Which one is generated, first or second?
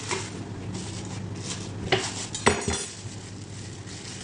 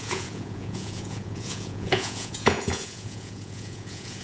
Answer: second